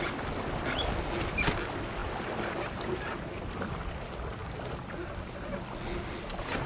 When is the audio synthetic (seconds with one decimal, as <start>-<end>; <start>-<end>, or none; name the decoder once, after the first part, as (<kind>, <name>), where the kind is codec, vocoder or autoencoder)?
none